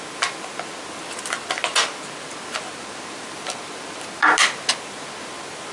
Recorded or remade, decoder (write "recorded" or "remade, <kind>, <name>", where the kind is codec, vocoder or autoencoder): recorded